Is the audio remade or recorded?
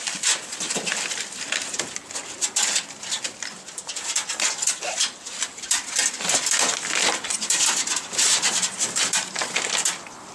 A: remade